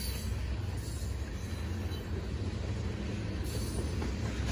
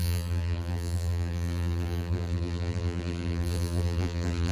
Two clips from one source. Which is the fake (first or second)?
second